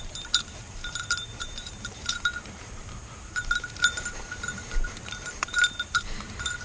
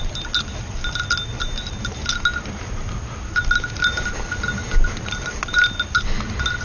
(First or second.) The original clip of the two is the second